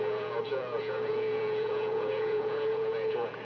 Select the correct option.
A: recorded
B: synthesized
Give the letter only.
B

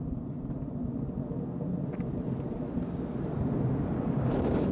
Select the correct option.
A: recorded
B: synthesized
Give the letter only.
A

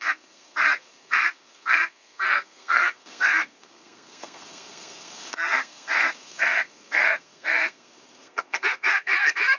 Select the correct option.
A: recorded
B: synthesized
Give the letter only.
B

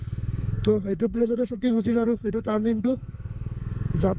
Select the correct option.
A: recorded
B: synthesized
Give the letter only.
B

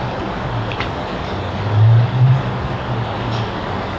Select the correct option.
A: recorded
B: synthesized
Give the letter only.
B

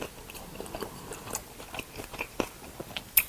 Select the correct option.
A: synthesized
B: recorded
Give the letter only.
B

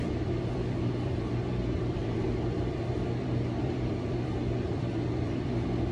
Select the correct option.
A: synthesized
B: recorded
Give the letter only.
A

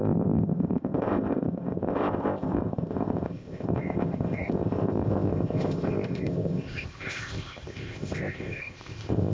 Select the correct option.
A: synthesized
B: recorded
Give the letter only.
A